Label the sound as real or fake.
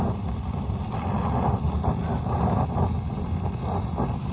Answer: real